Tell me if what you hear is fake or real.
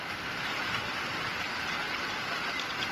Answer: fake